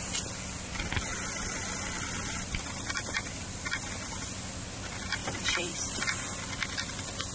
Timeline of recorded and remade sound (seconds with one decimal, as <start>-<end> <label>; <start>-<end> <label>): 0.0-1.1 recorded; 1.1-3.9 remade; 3.9-5.2 recorded; 5.2-6.0 remade; 6.0-7.3 recorded